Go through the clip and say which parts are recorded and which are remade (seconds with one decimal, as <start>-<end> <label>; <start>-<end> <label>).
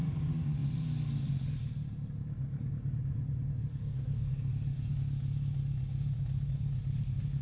0.0-3.8 recorded; 3.8-4.5 remade; 4.5-7.4 recorded